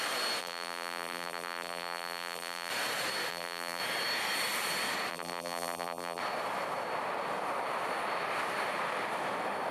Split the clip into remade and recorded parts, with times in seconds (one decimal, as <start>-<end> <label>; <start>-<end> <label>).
0.0-0.4 recorded; 0.4-2.7 remade; 2.7-3.3 recorded; 3.3-3.8 remade; 3.8-5.1 recorded; 5.1-6.2 remade; 6.2-9.7 recorded